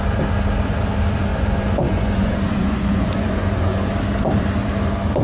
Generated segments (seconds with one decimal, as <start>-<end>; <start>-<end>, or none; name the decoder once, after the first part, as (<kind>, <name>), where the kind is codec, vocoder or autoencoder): 1.3-3.9 (vocoder, Vocos)